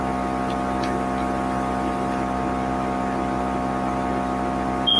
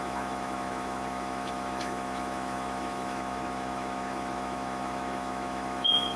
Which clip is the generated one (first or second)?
second